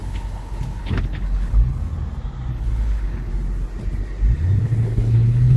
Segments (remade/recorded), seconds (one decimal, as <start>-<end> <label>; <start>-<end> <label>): 0.0-1.9 remade; 1.9-2.5 recorded; 2.5-3.3 remade; 3.3-4.6 recorded; 4.6-5.6 remade